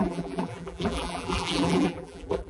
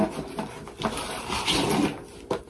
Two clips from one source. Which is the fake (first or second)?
first